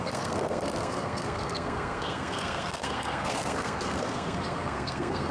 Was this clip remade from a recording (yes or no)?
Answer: yes